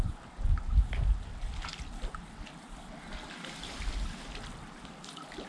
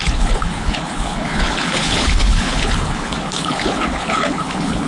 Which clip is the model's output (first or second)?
second